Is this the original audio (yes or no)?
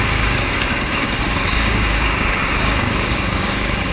no